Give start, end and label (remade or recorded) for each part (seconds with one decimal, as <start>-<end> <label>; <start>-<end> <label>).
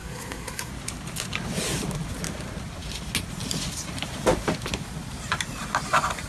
0.0-0.7 remade; 0.7-6.3 recorded